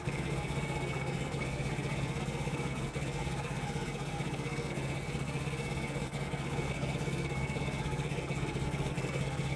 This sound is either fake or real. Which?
fake